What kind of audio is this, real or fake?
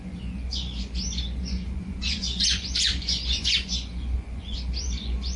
fake